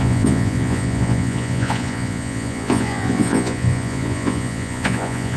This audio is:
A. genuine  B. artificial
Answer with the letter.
B